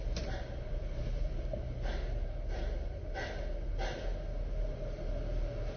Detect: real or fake real